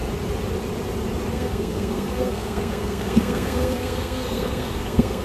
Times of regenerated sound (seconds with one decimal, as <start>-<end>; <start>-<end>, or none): 1.3-5.2